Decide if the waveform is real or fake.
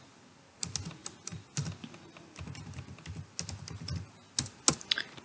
real